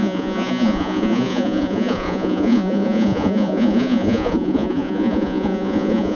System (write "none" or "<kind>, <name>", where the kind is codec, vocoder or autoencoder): vocoder, Vocos